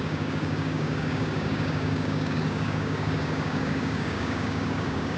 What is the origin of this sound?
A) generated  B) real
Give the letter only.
A